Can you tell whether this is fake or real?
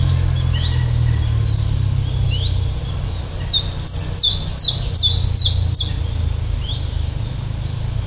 real